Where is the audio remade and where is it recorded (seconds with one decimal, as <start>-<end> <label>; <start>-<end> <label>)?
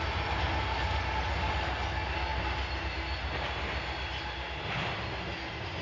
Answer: 0.0-5.8 recorded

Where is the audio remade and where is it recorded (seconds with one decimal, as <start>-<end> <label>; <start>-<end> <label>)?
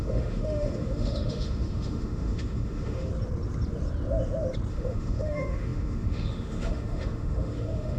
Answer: 0.0-3.1 remade; 3.1-4.7 recorded; 4.7-8.0 remade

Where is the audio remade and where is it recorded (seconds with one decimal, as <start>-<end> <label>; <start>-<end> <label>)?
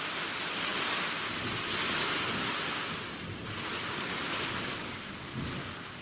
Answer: 0.0-6.0 recorded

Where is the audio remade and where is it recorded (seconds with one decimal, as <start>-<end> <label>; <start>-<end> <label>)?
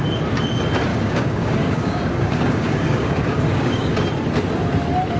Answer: 0.0-0.9 recorded; 0.9-4.0 remade; 4.0-5.2 recorded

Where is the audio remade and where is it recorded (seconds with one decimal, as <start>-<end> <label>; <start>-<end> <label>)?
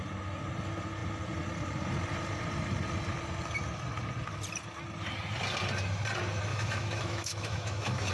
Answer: 0.0-6.5 recorded; 6.5-8.1 remade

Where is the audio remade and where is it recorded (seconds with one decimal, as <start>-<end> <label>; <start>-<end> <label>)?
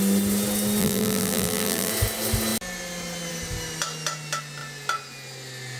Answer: 0.0-0.8 recorded; 0.8-1.9 remade; 1.9-5.8 recorded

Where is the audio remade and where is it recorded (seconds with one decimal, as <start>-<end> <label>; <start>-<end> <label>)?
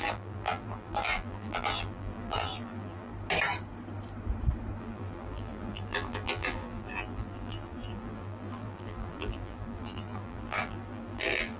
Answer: 0.0-3.1 remade; 3.1-4.8 recorded; 4.8-11.6 remade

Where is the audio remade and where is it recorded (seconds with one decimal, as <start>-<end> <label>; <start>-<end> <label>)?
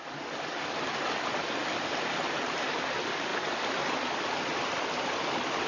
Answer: 0.0-5.7 recorded